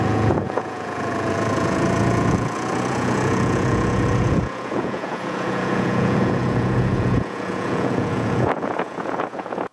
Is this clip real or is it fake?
fake